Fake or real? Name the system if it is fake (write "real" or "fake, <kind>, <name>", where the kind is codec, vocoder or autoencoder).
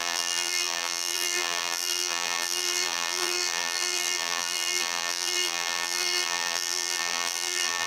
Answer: fake, vocoder, BigVGAN v2